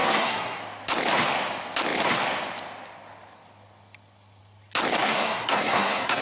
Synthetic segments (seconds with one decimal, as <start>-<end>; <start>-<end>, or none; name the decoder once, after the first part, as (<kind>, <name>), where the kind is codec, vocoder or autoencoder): 0.0-0.6 (codec, SNAC); 5.0-6.2